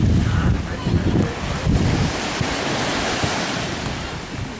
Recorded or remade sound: recorded